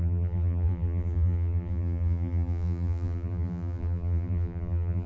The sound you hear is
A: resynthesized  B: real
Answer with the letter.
A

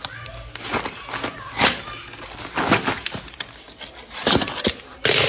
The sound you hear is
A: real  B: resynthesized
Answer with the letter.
A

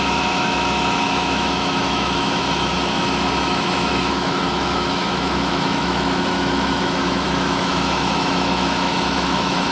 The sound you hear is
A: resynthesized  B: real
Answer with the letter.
A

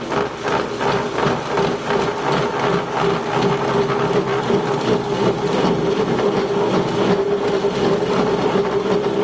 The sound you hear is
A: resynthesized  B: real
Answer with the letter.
B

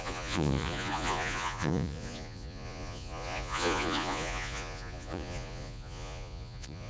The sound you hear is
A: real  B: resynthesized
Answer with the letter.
B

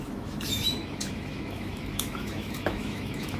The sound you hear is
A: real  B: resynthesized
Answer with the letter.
B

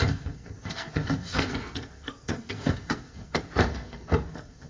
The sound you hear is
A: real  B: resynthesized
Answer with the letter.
B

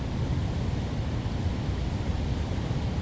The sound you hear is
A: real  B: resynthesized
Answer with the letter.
A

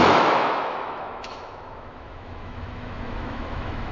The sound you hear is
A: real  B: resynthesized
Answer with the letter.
B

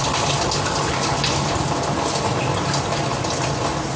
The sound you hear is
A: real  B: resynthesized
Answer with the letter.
A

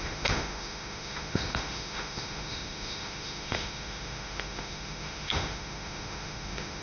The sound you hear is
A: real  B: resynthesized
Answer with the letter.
B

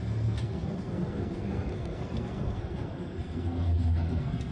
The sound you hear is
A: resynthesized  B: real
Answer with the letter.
A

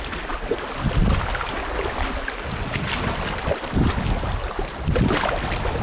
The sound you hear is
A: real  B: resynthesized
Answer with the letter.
A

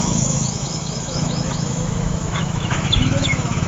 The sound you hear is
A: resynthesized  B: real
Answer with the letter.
A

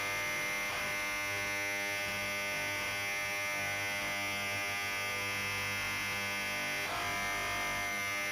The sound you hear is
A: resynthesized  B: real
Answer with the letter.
B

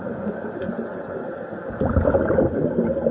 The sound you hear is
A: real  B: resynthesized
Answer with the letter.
A